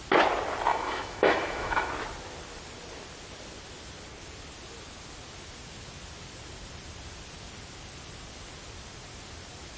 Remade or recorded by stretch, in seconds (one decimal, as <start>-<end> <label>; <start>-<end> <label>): 0.0-0.7 recorded; 0.7-1.9 remade; 1.9-9.8 recorded